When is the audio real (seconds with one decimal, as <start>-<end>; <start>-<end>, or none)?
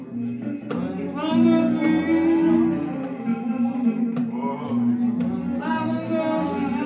0.0-3.3; 4.7-6.9